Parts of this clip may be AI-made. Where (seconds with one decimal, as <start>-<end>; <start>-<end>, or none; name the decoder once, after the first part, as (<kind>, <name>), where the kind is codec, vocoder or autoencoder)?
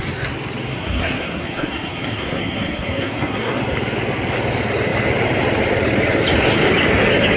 0.7-3.5 (codec, SNAC)